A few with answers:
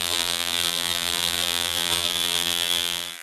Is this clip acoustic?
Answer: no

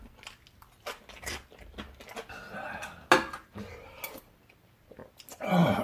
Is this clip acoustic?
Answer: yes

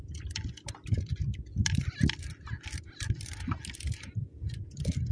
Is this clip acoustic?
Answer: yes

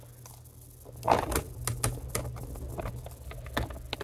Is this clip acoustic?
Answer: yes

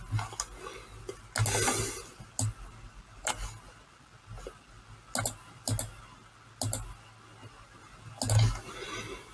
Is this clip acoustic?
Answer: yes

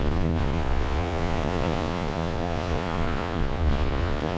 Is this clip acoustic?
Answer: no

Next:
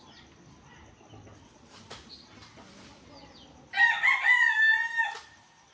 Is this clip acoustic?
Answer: yes